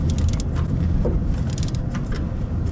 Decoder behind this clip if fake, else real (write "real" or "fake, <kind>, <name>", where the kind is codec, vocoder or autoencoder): real